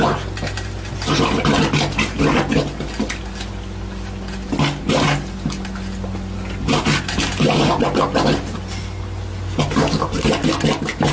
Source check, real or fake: real